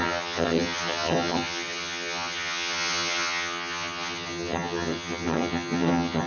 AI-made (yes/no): yes